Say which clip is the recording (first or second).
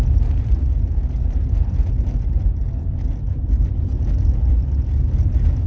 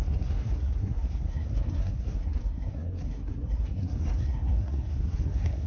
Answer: first